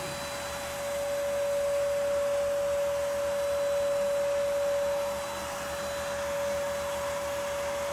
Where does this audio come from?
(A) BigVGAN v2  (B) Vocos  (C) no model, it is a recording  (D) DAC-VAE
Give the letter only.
C